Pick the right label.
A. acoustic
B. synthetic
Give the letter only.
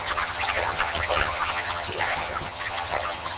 B